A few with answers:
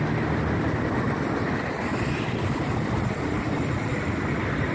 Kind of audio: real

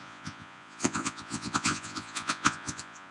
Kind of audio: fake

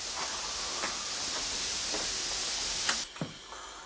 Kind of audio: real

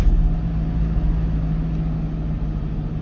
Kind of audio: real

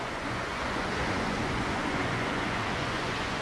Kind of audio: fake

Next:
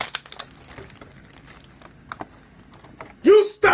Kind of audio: real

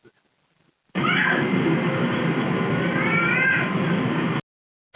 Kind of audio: real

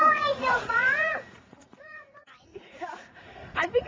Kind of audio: fake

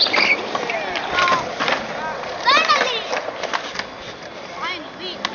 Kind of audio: real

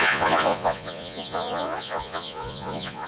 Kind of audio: fake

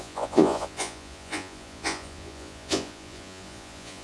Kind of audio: fake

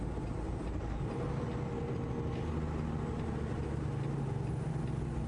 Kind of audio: real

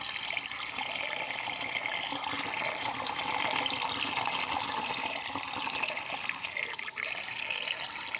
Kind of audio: real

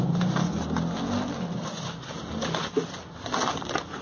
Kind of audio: real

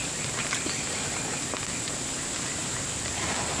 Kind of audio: real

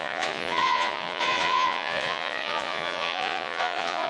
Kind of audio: fake